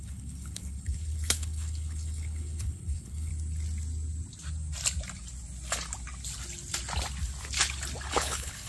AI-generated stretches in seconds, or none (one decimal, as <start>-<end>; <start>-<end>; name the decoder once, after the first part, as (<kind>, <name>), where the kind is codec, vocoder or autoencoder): 0.0-3.3 (codec, HILCodec); 8.1-8.7